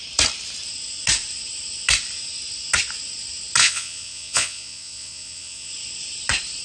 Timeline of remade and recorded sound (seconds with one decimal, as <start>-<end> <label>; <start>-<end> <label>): 0.0-3.6 recorded; 3.6-5.7 remade; 5.7-6.6 recorded